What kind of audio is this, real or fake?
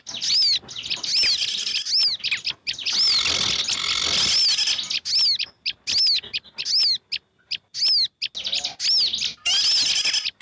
real